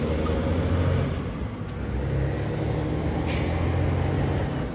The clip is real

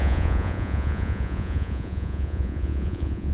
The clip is fake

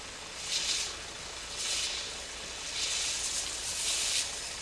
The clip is real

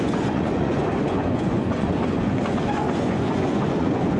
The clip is fake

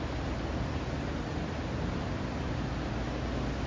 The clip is real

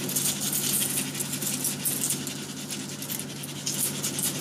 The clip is real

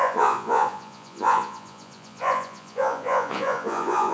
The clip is fake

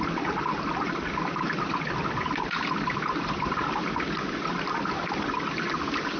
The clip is real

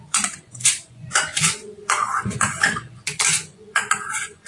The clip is fake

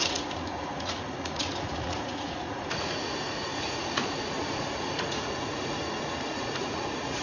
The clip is fake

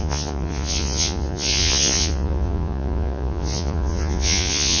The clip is fake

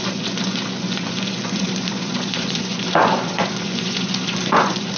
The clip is fake